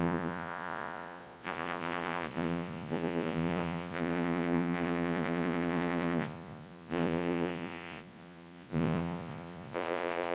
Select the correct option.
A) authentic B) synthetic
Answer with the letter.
B